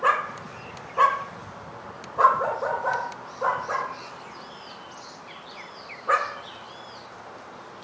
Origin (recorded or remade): recorded